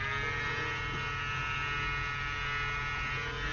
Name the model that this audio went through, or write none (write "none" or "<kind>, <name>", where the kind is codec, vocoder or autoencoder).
none